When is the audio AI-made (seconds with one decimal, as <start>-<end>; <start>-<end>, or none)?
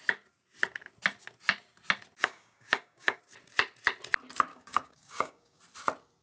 2.2-3.2; 4.5-5.6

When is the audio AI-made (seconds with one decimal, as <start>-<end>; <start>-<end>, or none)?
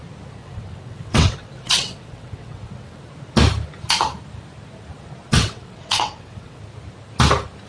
0.4-3.0; 5.3-6.6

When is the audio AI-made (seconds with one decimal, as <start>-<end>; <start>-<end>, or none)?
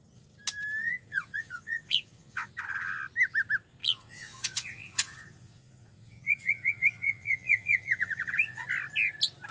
0.8-2.5; 3.8-8.7